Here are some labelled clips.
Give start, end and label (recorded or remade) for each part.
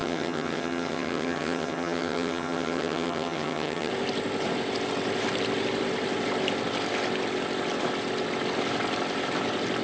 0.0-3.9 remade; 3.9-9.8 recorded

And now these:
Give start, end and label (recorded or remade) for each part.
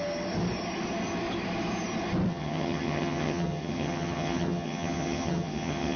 0.0-2.3 recorded; 2.3-6.0 remade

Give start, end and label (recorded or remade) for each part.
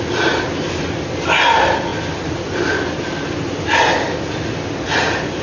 0.0-5.4 recorded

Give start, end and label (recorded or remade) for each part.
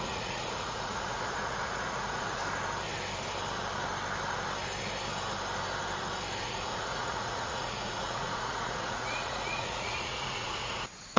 0.0-2.4 remade; 2.4-6.4 recorded; 6.4-11.2 remade